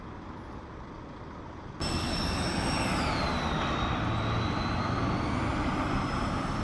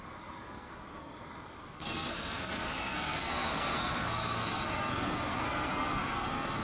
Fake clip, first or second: second